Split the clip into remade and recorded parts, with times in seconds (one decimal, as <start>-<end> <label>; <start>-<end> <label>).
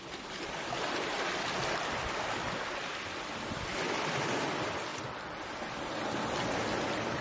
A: 0.0-7.2 recorded